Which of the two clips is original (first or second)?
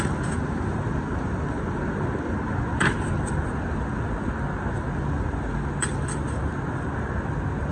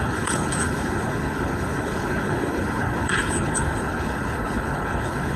first